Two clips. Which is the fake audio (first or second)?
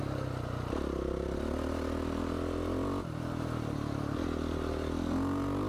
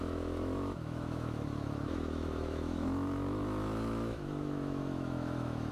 second